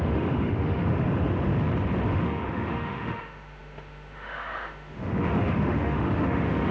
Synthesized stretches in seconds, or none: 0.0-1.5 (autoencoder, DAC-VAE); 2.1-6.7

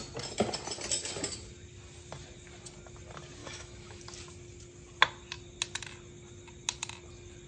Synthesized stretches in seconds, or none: 3.4-4.0 (autoencoder, DAC-VAE)

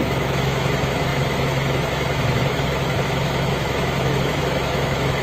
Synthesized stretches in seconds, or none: 0.0-5.2 (autoencoder, DAC-VAE)

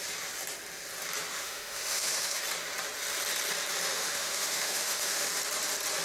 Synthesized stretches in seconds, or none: 1.3-2.4 (autoencoder, DAC-VAE); 3.9-5.3

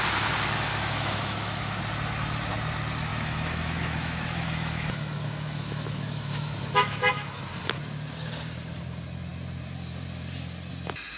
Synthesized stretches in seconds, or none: 0.7-1.8 (autoencoder, DAC-VAE); 3.1-7.4

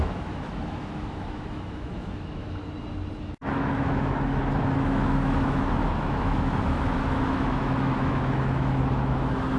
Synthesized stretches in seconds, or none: 0.0-2.6 (autoencoder, DAC-VAE); 3.2-9.6